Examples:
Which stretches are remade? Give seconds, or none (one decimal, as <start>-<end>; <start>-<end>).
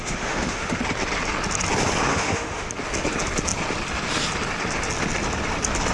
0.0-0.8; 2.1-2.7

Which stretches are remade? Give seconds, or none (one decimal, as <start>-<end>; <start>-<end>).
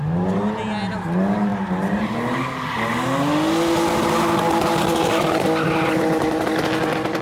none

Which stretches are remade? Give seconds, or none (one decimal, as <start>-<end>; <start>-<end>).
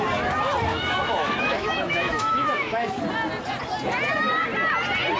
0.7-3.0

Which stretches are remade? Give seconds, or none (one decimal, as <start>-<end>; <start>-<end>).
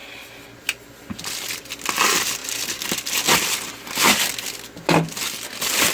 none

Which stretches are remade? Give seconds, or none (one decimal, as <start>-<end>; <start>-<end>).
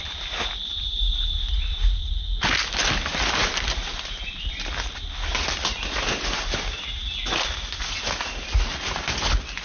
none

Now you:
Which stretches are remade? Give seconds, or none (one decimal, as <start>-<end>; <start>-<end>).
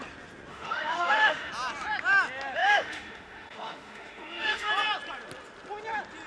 0.5-1.5; 2.6-4.7